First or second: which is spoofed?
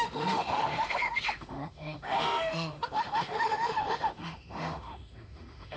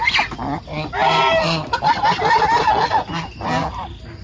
first